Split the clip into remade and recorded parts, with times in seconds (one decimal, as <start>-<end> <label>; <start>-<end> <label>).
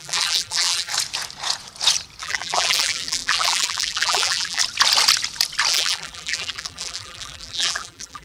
0.0-0.9 remade; 0.9-2.2 recorded; 2.2-4.6 remade; 4.6-5.7 recorded; 5.7-8.2 remade